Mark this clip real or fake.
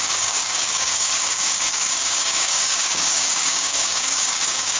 fake